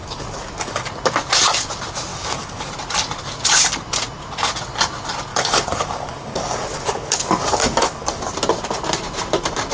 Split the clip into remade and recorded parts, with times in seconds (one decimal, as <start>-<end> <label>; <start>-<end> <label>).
0.0-0.9 remade; 0.9-2.1 recorded; 2.1-2.7 remade; 2.7-5.3 recorded; 5.3-8.2 remade; 8.2-9.7 recorded